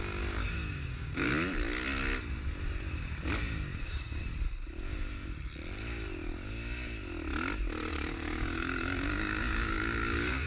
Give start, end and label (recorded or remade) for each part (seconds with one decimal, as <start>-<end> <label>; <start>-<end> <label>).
0.0-1.3 remade; 1.3-3.8 recorded; 3.8-4.2 remade; 4.2-7.9 recorded; 7.9-10.5 remade